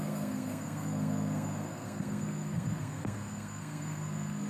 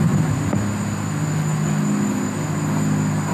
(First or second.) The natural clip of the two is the second